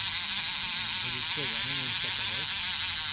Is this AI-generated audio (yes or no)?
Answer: no